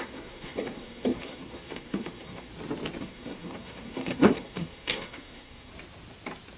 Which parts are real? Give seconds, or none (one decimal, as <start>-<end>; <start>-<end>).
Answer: 2.5-3.0; 5.7-6.6